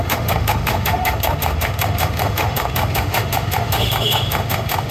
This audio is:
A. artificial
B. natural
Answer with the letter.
A